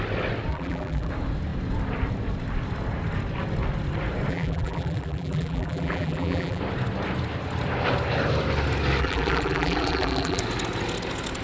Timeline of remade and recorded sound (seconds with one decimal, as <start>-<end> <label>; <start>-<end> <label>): 0.0-0.5 recorded; 0.5-1.1 remade; 1.1-4.3 recorded; 4.3-6.6 remade; 6.6-9.0 recorded; 9.0-10.4 remade; 10.4-11.4 recorded